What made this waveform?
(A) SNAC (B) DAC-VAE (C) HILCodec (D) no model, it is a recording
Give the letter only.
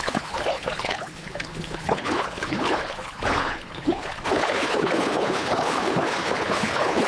C